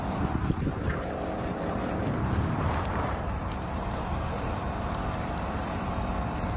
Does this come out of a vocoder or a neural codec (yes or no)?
yes